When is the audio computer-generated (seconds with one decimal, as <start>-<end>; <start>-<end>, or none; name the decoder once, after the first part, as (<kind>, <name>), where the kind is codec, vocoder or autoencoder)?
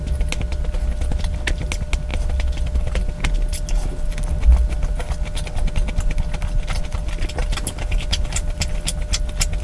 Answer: none